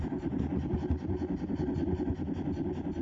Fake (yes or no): no